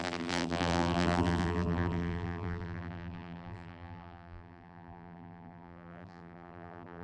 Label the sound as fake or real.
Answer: fake